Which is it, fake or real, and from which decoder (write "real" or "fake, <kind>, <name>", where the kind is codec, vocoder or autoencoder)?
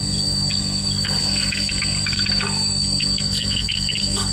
fake, codec, SNAC